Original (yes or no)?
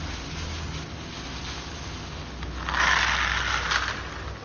yes